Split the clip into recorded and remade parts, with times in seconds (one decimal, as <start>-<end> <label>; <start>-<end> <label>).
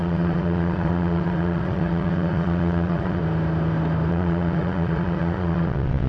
0.0-3.2 remade; 3.2-4.1 recorded; 4.1-6.1 remade